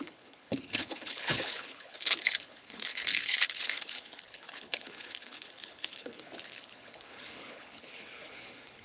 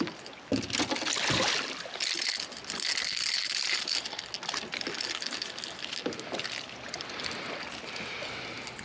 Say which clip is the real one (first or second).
second